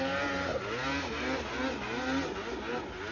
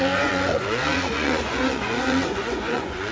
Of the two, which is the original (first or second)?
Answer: first